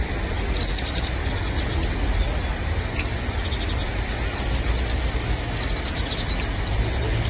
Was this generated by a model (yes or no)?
no